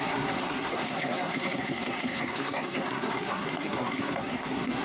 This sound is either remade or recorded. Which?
remade